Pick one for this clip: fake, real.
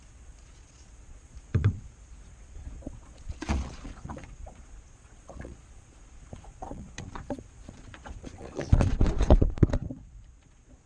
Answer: fake